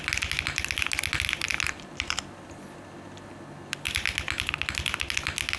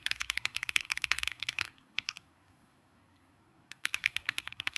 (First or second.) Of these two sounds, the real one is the first